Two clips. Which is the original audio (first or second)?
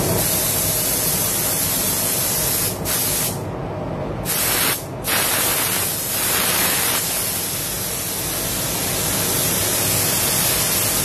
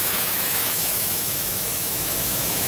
first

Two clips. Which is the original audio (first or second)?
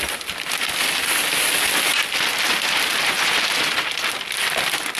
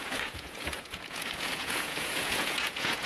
first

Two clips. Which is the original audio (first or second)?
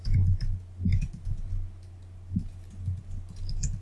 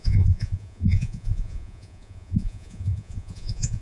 first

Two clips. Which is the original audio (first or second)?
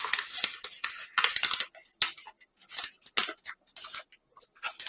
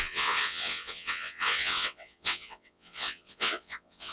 first